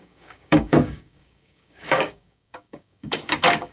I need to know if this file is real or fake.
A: fake